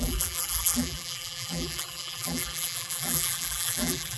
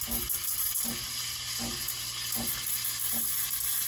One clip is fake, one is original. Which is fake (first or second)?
first